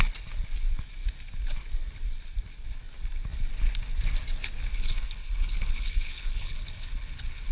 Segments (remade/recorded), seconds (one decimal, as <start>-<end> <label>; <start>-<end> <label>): 0.0-4.7 recorded; 4.7-7.5 remade